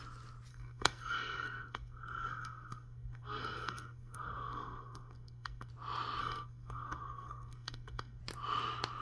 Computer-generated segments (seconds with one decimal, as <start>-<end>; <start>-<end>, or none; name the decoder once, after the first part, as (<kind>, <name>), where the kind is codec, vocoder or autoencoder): 0.5-5.7 (codec, SNAC); 6.2-8.2